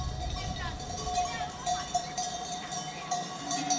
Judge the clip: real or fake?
fake